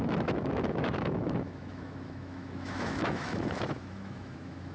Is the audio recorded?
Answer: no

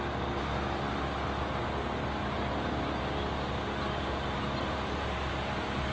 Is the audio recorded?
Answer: yes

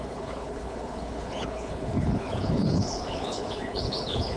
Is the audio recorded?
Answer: no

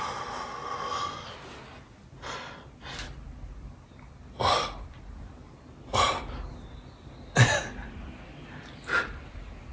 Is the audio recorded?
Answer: yes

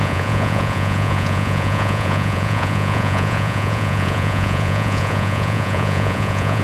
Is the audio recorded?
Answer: no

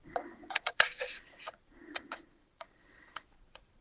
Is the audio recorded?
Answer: no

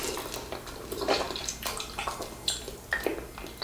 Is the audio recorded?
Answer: yes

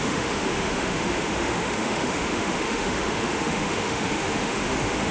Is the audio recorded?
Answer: no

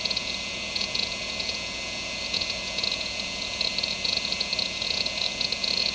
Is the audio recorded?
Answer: no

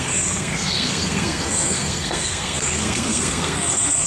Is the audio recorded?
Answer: no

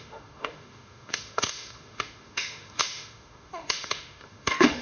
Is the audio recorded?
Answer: no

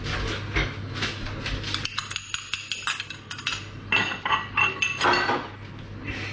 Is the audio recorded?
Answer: yes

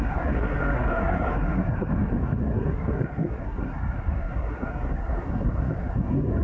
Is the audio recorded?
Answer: no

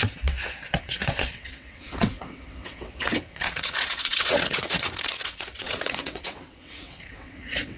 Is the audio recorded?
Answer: no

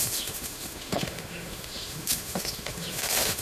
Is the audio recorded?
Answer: no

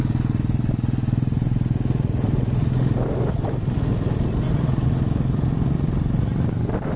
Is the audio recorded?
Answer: yes